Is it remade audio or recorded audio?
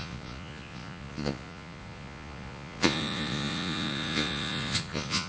remade